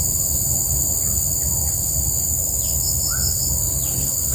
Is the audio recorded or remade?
recorded